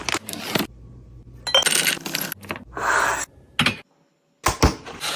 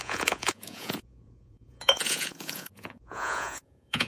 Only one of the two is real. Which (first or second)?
first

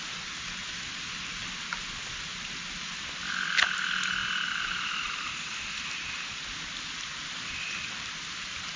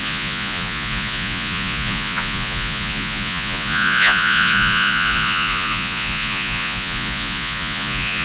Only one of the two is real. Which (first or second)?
first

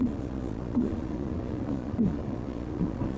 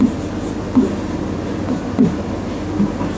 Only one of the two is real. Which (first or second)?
second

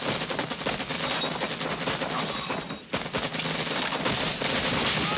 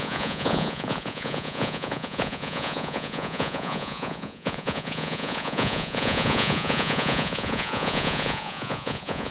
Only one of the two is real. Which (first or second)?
first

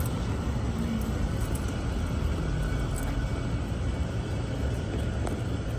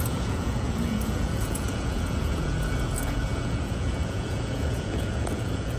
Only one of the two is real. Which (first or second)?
first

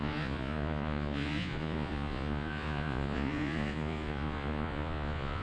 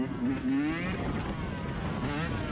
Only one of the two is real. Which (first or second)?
second